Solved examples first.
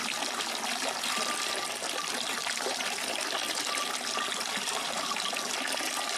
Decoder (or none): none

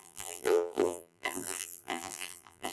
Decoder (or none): vocoder, BigVGAN v2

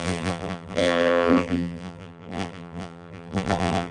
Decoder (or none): vocoder, BigVGAN v2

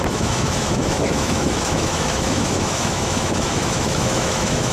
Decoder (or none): autoencoder, DAC-VAE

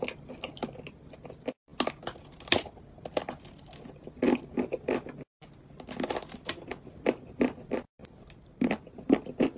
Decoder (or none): none